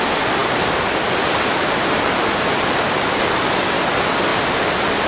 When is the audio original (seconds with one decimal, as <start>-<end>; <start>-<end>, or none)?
0.0-5.1